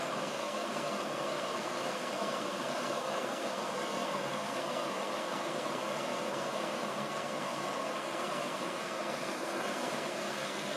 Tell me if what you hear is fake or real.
fake